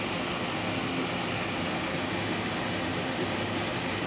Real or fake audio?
real